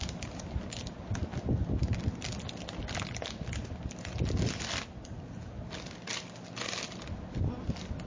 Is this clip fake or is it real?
real